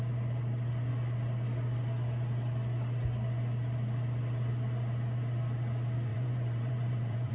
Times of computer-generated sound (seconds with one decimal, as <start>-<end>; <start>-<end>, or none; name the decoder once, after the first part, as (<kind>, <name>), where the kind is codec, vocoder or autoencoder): 6.1-7.3 (vocoder, Vocos)